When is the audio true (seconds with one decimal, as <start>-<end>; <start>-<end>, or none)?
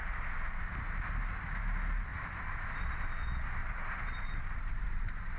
0.0-3.6